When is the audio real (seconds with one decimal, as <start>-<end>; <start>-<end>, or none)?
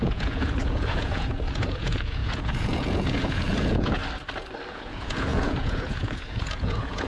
4.0-4.7